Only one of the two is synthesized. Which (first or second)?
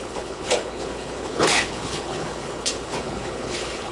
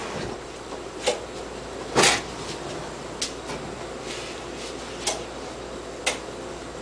first